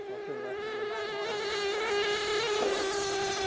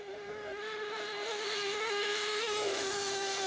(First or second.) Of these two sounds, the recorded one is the first